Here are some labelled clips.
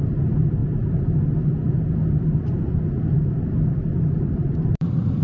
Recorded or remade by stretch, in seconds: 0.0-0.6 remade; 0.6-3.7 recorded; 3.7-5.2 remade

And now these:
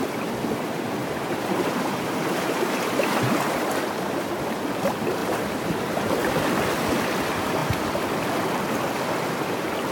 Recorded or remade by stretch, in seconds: 0.0-1.0 recorded; 1.0-4.3 remade; 4.3-5.2 recorded; 5.2-6.1 remade; 6.1-9.9 recorded

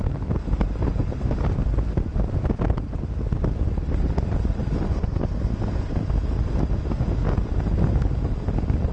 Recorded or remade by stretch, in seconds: 0.0-0.4 recorded; 0.4-1.6 remade; 1.6-8.9 recorded

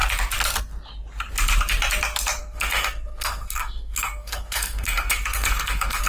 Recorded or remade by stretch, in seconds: 0.0-2.4 recorded; 2.4-6.1 remade

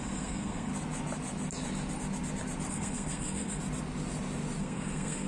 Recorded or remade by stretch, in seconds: 0.0-0.7 remade; 0.7-2.7 recorded; 2.7-3.6 remade; 3.6-4.6 recorded; 4.6-5.3 remade